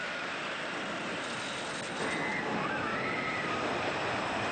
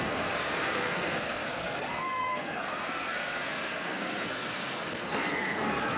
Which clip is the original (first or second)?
first